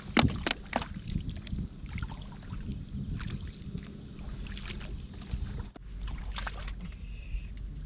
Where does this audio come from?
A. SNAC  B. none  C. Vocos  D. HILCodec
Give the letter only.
B